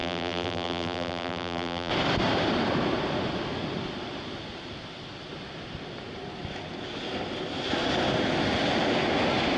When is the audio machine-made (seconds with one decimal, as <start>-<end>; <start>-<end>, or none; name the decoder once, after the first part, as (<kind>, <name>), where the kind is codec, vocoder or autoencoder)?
0.0-1.9 (vocoder, BigVGAN v2)